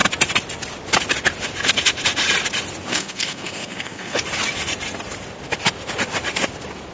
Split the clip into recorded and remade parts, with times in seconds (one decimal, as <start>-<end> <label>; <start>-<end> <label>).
0.0-2.9 recorded; 2.9-4.2 remade; 4.2-6.9 recorded